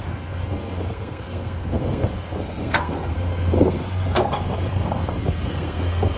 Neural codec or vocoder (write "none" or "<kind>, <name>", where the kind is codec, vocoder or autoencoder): codec, SNAC